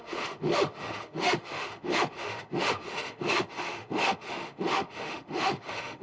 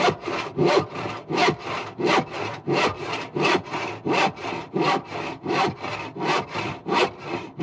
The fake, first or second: first